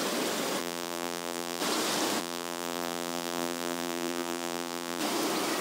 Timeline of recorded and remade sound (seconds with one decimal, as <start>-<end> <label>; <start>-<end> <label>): 0.0-0.6 recorded; 0.6-1.6 remade; 1.6-2.2 recorded; 2.2-5.0 remade; 5.0-5.6 recorded